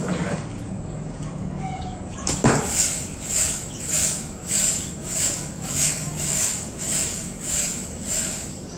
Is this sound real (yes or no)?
no